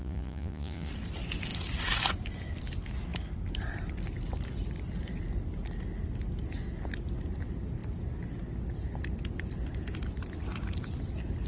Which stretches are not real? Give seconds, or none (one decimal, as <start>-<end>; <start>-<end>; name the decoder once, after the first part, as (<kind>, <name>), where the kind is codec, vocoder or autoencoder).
0.0-0.9 (vocoder, Vocos)